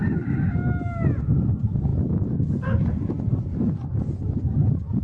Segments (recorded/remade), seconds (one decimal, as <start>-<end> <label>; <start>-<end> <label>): 0.0-5.0 recorded